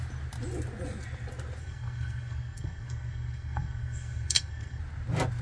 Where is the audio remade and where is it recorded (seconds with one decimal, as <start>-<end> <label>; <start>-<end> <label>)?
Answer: 0.0-1.6 recorded; 1.6-4.8 remade; 4.8-5.4 recorded